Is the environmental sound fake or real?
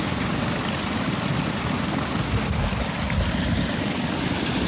real